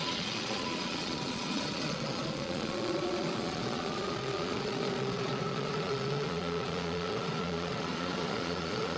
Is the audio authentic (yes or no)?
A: no